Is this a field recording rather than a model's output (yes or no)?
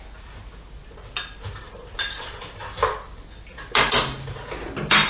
yes